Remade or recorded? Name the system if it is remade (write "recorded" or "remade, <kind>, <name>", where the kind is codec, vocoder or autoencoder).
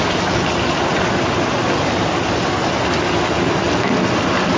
recorded